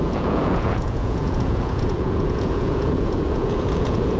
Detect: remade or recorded remade